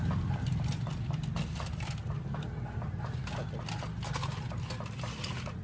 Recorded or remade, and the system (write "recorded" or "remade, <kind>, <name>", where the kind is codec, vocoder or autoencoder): recorded